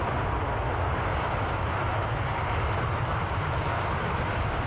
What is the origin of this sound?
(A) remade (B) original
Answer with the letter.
B